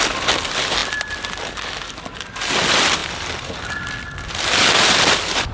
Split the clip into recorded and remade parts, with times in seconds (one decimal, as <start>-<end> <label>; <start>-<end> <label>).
0.0-5.5 recorded